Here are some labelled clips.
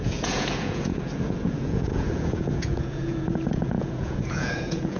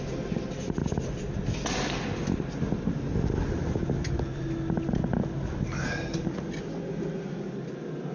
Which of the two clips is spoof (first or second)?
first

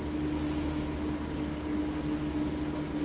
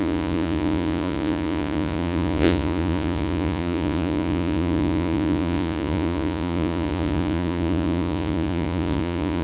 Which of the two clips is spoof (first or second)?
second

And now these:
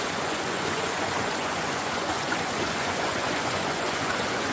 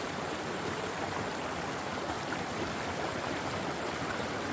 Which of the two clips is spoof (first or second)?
first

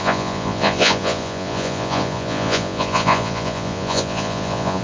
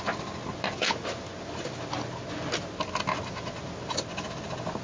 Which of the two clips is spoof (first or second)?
first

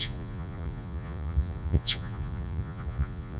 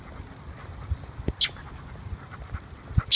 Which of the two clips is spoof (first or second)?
first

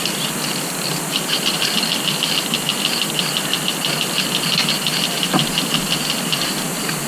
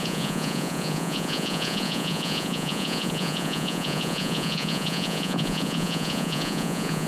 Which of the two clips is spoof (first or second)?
second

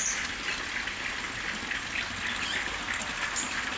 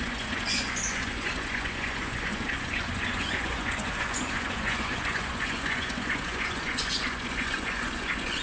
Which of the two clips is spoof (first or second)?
second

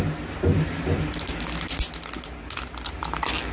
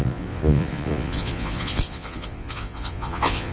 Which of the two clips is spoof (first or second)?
second